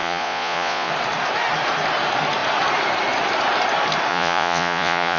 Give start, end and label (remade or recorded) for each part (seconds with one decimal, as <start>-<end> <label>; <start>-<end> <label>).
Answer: 0.0-0.9 remade; 0.9-4.1 recorded; 4.1-5.2 remade